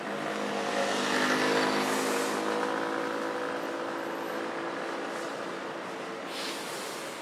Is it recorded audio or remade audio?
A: recorded